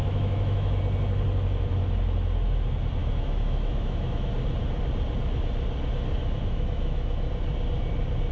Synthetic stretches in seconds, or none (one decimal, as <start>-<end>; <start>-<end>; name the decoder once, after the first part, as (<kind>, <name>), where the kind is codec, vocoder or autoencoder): 0.0-0.8 (autoencoder, DAC-VAE); 3.0-4.3; 6.2-7.3